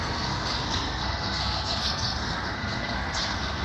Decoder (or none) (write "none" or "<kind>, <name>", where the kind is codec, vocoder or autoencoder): codec, SNAC